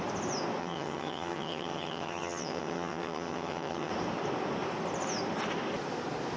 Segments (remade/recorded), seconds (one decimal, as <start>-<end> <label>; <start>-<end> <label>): 0.0-0.6 recorded; 0.6-3.9 remade; 3.9-6.4 recorded